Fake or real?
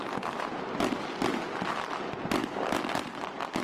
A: real